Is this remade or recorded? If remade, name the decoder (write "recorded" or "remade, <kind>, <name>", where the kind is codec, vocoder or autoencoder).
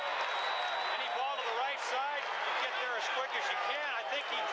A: recorded